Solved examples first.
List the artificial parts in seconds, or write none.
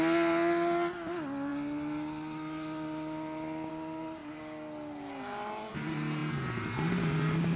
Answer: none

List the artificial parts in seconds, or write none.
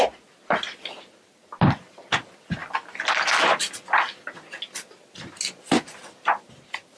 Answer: none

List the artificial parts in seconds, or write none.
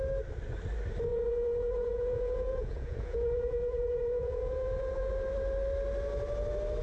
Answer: 1.1-5.1 (vocoder, Vocos)